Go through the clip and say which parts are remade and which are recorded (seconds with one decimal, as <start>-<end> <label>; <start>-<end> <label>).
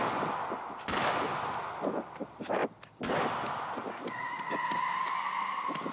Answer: 0.0-5.9 recorded